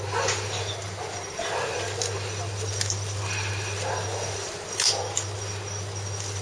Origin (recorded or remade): recorded